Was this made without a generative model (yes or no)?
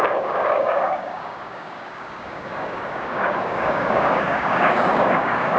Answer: no